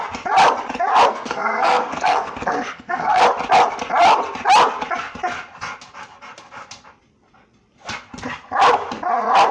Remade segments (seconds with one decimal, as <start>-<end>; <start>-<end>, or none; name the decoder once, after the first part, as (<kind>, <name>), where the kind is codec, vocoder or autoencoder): 1.1-3.2 (codec, SNAC)